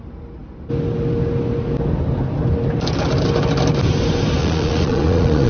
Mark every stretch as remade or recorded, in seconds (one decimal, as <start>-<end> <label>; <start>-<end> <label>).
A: 0.0-4.4 recorded; 4.4-5.5 remade